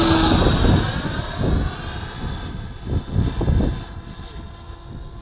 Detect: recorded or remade recorded